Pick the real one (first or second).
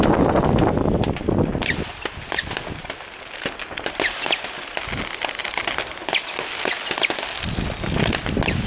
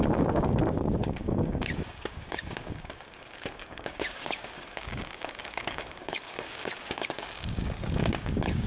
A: first